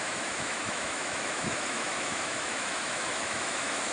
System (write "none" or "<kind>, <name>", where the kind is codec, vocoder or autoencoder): autoencoder, DAC-VAE